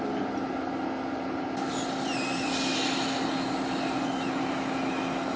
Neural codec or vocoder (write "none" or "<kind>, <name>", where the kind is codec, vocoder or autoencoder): none